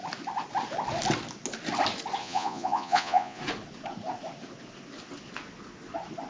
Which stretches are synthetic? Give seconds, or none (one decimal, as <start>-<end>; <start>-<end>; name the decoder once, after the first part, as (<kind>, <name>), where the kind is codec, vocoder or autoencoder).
2.2-3.4 (vocoder, Vocos)